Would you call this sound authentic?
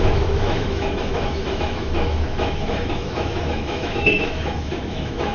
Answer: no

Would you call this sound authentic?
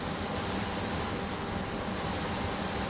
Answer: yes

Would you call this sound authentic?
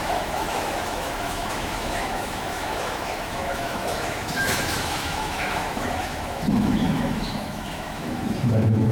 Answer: no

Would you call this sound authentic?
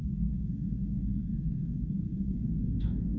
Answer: no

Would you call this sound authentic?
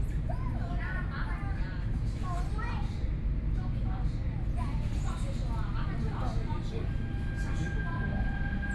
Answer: yes